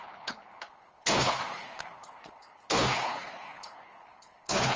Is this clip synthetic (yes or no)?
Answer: yes